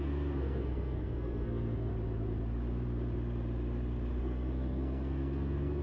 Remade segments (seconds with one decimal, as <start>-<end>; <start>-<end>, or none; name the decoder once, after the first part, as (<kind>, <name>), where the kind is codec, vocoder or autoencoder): 0.0-1.9 (codec, SNAC); 4.2-5.8

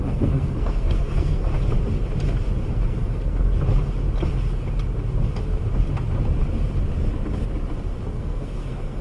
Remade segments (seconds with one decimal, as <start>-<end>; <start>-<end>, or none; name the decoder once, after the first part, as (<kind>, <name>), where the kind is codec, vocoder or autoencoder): 0.0-1.5 (codec, SNAC); 2.7-3.5; 8.1-9.0

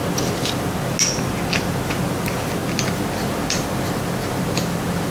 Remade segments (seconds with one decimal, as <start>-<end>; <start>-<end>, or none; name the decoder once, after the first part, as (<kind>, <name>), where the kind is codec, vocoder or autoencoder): none

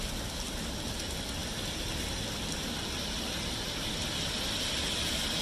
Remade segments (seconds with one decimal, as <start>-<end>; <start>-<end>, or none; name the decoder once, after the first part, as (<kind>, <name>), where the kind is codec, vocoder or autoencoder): none

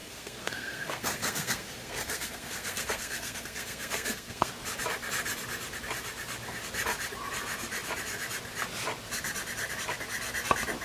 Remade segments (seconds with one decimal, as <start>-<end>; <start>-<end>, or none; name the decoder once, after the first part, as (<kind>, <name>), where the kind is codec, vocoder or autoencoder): 0.0-4.5 (codec, SNAC)

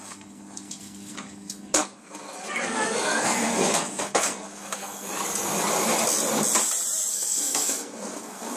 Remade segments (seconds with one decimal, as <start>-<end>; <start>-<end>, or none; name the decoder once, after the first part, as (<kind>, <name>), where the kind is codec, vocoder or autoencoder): 0.0-5.1 (codec, SNAC); 7.1-8.6

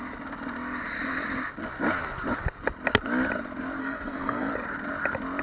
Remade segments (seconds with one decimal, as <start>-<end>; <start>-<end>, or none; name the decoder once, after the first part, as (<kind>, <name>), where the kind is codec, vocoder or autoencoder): 3.8-4.5 (codec, SNAC)

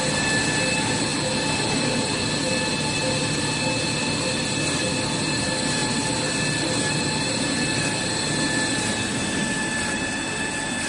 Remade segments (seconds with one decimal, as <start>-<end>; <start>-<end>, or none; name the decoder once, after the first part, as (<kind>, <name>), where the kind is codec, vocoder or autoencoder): none